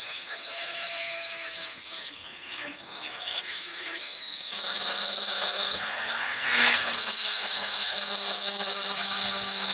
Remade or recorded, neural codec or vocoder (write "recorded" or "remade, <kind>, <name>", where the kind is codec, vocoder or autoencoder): remade, codec, SNAC